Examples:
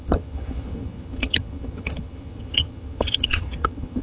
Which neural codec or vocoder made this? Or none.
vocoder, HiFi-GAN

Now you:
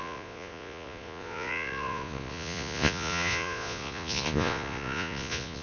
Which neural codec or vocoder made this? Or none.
vocoder, Vocos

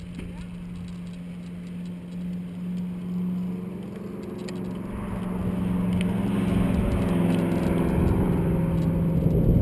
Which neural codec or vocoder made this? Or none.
none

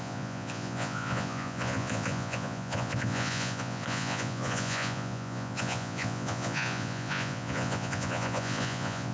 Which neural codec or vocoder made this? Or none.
vocoder, Vocos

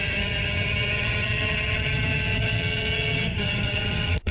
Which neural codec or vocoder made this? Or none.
vocoder, HiFi-GAN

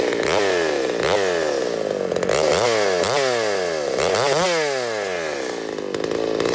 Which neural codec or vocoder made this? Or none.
none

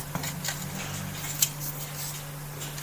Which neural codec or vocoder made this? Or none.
none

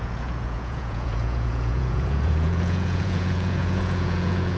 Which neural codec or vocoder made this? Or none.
vocoder, Vocos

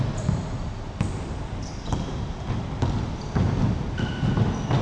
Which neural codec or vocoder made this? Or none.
none